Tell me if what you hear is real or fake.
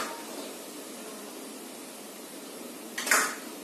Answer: real